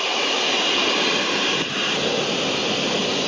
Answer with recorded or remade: recorded